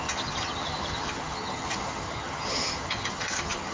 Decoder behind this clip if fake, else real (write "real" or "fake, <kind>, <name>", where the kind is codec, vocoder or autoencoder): fake, vocoder, HiFi-GAN